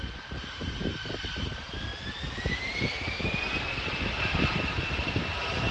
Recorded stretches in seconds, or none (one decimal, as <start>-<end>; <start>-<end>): 1.9-2.6